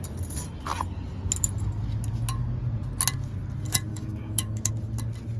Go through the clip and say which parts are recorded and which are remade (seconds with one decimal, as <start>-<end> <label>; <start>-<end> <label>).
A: 0.0-3.9 recorded; 3.9-4.7 remade; 4.7-5.4 recorded